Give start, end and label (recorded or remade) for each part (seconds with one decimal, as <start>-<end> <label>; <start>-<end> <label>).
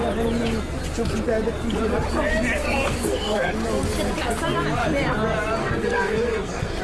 0.0-2.6 recorded; 2.6-3.5 remade; 3.5-5.6 recorded; 5.6-6.8 remade